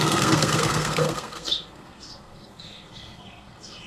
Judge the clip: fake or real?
fake